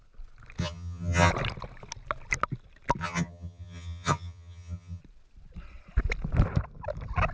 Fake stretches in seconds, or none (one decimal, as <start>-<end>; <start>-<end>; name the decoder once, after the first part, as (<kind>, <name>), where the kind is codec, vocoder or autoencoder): 0.6-1.3 (vocoder, HiFi-GAN); 3.0-5.0